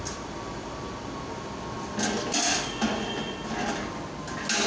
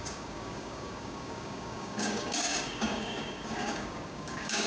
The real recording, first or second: first